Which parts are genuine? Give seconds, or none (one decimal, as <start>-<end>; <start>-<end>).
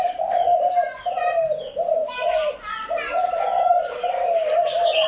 0.0-5.1